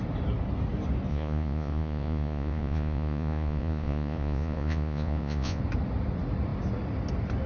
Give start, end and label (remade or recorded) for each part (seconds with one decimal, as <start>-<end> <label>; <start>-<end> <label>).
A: 0.0-1.1 recorded; 1.1-5.6 remade; 5.6-7.5 recorded